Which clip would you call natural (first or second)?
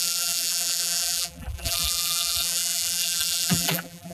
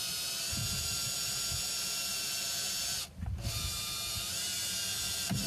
second